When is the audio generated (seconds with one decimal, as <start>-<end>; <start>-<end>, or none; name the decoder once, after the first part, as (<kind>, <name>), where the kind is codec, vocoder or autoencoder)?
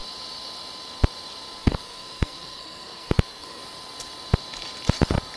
1.6-3.6 (codec, SNAC)